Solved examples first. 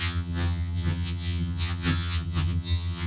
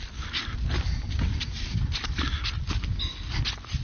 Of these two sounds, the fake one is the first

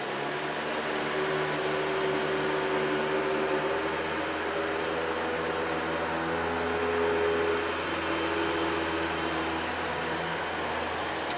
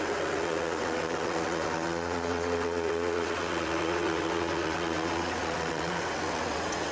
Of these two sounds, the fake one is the second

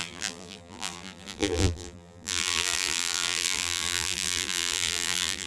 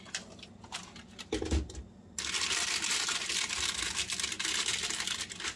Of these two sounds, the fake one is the first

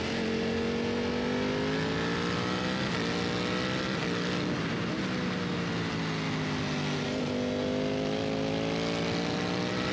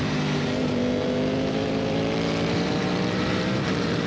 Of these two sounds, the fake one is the second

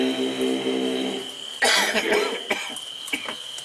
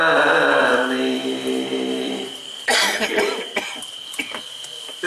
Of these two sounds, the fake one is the second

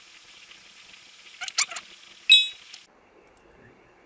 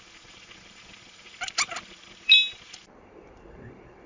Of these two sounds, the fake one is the second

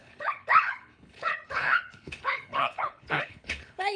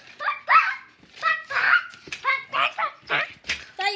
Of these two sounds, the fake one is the first